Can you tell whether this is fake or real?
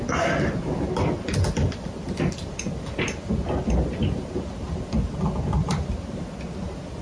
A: real